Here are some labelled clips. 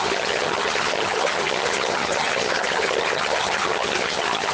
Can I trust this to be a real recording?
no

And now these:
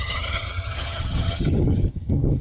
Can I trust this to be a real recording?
no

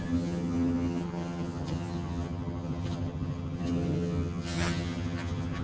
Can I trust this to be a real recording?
no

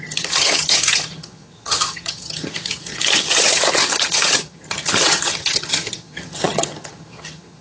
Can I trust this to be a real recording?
no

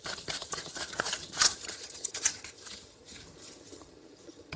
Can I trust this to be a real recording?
no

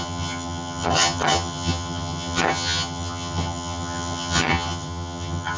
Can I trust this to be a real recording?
no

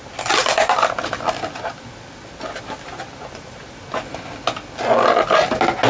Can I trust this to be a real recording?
yes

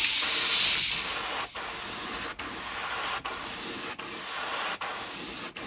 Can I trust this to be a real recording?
yes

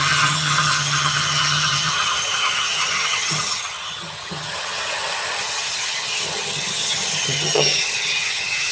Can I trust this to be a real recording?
no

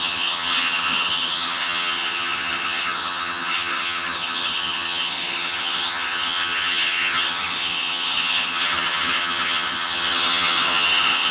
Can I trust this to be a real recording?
no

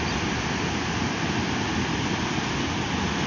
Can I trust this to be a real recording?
yes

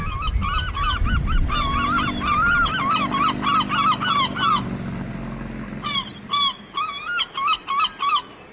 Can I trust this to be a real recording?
yes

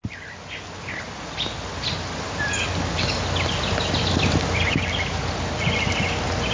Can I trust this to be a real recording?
yes